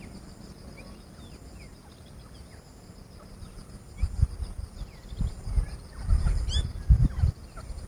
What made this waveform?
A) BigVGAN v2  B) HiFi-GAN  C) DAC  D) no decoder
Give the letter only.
D